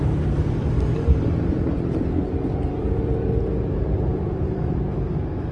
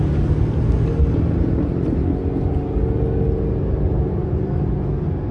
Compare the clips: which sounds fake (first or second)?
first